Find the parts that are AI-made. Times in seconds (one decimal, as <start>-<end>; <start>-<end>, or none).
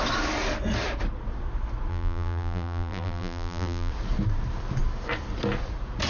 1.9-3.9